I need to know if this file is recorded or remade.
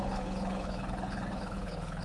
remade